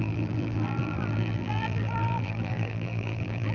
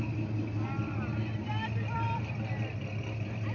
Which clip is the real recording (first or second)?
second